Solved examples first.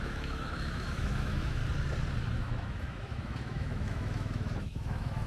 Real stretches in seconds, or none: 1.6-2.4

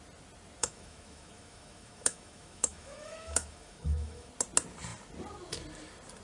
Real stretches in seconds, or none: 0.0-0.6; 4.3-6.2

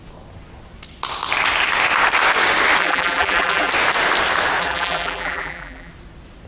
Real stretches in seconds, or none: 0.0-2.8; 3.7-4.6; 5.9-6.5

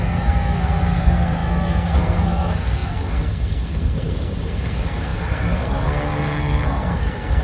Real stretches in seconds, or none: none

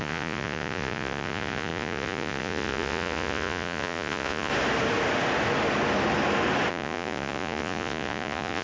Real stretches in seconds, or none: 4.5-6.7

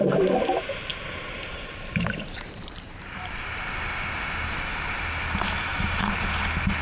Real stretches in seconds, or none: 0.0-0.9; 3.4-5.7; 6.3-6.8

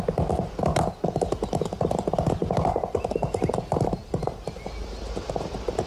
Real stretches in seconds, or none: 0.0-5.9